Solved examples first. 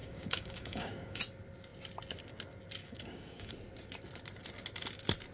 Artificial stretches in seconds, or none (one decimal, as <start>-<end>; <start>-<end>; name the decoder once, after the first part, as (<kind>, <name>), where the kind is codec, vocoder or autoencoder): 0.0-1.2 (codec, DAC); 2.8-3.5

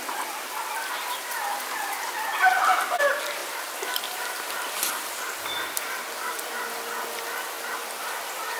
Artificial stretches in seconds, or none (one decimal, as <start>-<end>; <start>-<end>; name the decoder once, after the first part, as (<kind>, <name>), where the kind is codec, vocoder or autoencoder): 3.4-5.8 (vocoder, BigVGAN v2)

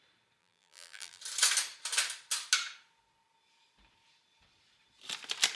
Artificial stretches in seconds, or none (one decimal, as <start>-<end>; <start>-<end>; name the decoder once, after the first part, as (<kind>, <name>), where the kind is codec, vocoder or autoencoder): 0.4-1.2 (vocoder, BigVGAN v2)

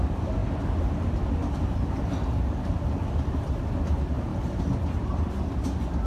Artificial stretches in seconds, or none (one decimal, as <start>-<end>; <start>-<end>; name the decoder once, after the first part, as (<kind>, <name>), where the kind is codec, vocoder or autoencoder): none